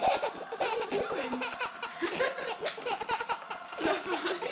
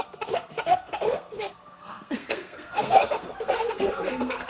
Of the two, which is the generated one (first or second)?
second